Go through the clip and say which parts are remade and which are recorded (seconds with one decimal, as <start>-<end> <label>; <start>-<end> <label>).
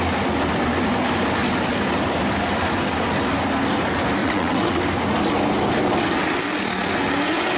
0.0-4.2 recorded; 4.2-4.8 remade; 4.8-7.6 recorded